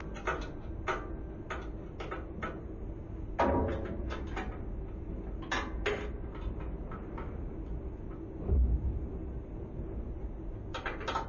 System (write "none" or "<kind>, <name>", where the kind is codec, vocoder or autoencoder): none